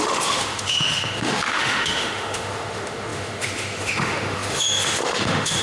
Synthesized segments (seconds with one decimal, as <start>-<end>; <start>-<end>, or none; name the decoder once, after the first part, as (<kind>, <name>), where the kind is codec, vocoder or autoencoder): 0.0-5.6 (autoencoder, DAC-VAE)